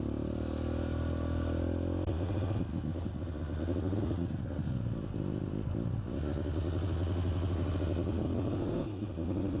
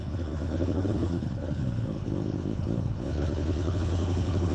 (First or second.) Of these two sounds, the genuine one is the first